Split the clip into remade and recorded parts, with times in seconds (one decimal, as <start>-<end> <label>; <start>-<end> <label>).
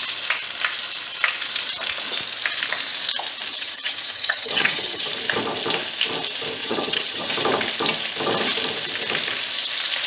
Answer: 0.0-3.5 recorded; 3.5-5.1 remade; 5.1-6.6 recorded; 6.6-7.3 remade; 7.3-10.1 recorded